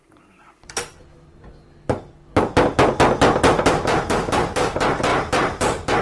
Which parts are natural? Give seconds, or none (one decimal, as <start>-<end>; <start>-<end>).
0.9-3.7